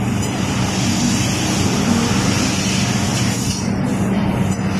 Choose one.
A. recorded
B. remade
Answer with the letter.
A